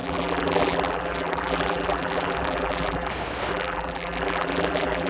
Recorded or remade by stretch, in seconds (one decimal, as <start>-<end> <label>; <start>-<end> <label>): 0.0-3.1 remade; 3.1-3.5 recorded; 3.5-5.1 remade